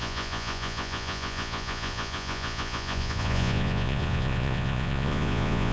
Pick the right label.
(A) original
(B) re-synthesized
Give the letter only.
B